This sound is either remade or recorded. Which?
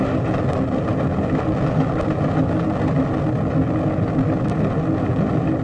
recorded